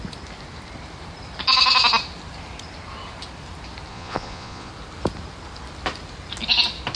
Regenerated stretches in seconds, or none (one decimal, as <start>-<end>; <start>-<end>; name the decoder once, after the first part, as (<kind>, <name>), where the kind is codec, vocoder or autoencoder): 3.9-4.7 (vocoder, Vocos)